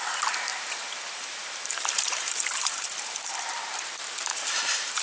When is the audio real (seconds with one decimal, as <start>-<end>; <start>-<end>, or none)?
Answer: 0.0-0.5; 3.5-4.3